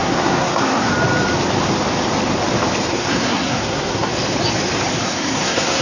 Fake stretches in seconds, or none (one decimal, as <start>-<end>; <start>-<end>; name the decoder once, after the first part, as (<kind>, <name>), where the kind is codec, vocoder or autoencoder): 0.0-0.9 (codec, SNAC); 2.9-4.1; 5.0-5.8